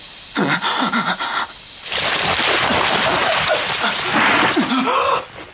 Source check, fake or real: real